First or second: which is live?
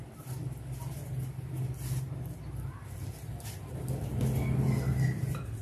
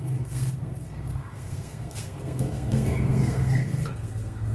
first